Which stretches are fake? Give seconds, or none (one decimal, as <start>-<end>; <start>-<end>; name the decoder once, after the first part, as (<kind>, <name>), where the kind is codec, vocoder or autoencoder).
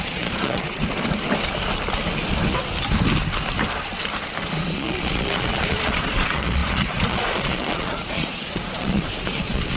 0.0-0.8 (vocoder, Vocos); 4.4-9.8